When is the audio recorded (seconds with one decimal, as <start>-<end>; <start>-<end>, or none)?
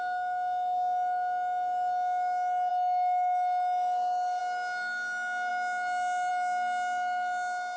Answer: 0.0-2.7; 4.4-7.8